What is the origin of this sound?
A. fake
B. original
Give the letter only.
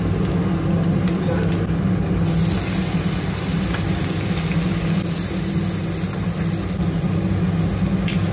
B